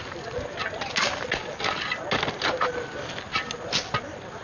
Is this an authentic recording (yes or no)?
yes